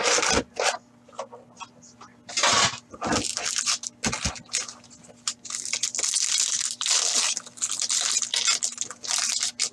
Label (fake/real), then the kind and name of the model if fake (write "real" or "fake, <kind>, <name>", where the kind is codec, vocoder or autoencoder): real